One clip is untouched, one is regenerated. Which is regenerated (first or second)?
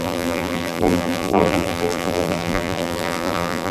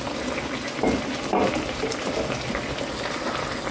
first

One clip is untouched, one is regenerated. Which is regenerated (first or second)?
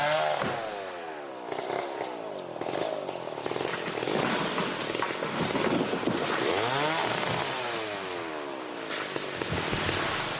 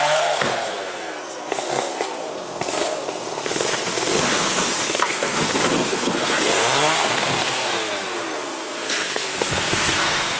second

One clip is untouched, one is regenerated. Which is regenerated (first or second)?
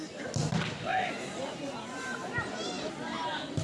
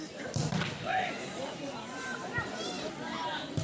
second